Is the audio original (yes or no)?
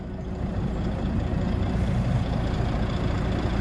no